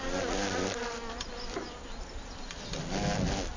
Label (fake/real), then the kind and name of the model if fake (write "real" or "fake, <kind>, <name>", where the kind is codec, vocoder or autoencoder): real